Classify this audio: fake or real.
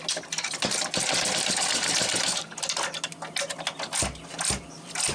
real